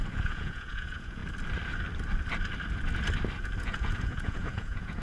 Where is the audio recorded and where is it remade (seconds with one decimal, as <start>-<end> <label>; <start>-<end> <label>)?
0.0-1.2 remade; 1.2-3.6 recorded; 3.6-5.0 remade